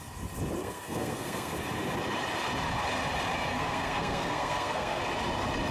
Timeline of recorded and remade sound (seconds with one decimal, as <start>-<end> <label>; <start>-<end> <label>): 0.0-0.6 recorded; 0.6-1.5 remade; 1.5-3.5 recorded; 3.5-5.0 remade; 5.0-5.7 recorded